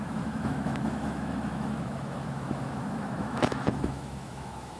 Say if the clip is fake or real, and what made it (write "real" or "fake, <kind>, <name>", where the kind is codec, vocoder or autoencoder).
fake, autoencoder, DAC-VAE